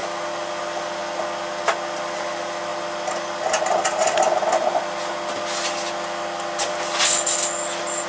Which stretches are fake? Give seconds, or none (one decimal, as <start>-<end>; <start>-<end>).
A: none